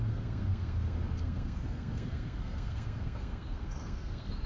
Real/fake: fake